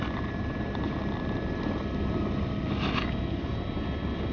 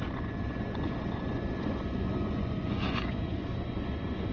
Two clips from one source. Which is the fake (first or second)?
second